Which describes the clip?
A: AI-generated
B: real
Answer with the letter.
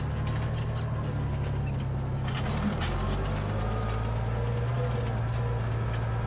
B